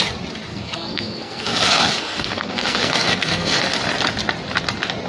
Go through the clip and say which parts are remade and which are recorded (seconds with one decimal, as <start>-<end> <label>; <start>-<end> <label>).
0.0-0.5 recorded; 0.5-3.6 remade; 3.6-5.1 recorded